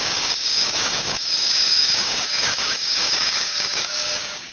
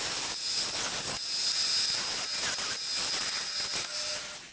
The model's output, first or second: first